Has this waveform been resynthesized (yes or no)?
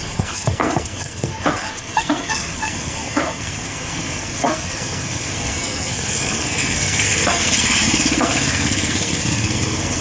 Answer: yes